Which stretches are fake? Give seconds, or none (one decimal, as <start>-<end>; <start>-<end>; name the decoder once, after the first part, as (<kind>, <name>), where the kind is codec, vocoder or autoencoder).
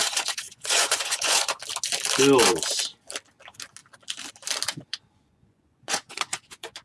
0.0-1.6 (vocoder, Vocos); 4.9-6.8